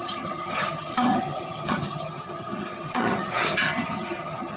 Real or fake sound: fake